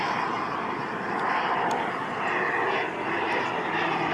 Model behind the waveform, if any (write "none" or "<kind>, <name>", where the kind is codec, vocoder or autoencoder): none